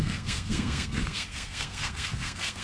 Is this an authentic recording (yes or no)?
no